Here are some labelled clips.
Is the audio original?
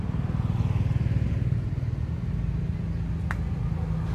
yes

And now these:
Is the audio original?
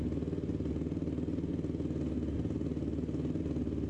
yes